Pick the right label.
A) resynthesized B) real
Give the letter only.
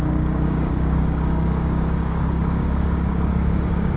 A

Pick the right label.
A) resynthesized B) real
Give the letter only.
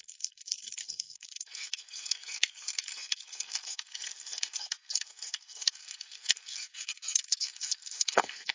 A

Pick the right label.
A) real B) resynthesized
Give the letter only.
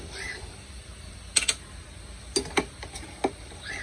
A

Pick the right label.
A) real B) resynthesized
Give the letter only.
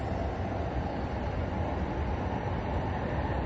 A